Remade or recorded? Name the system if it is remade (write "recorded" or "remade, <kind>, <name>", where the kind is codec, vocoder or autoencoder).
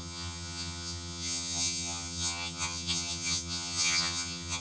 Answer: remade, vocoder, HiFi-GAN